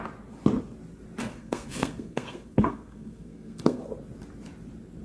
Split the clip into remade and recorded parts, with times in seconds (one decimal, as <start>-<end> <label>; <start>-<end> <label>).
0.0-1.2 recorded; 1.2-3.8 remade; 3.8-5.0 recorded